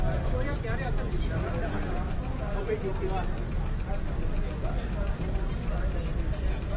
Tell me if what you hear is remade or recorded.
remade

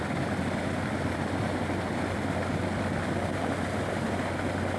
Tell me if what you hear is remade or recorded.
recorded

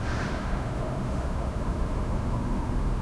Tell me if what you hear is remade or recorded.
remade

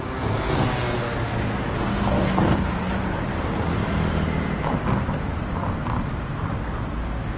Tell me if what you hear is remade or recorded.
recorded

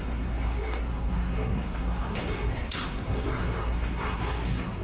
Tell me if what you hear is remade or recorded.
remade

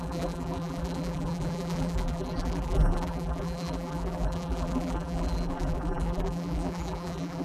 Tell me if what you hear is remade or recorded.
remade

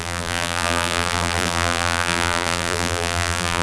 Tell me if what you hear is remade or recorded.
remade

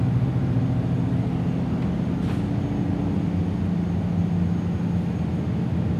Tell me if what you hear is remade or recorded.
recorded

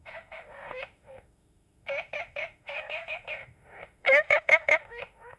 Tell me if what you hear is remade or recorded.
remade